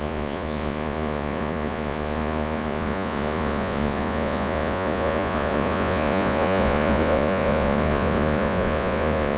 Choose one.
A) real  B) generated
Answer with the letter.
B